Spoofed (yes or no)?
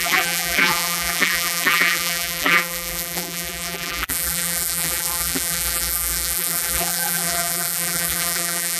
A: yes